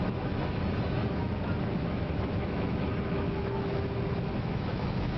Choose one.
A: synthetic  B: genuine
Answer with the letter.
A